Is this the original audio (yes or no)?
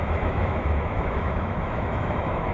no